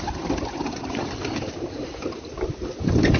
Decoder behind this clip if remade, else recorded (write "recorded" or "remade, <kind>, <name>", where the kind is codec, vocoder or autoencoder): recorded